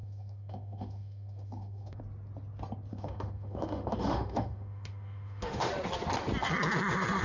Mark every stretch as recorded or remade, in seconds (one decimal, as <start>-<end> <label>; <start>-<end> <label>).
0.0-2.0 remade; 2.0-2.9 recorded; 2.9-5.7 remade; 5.7-7.2 recorded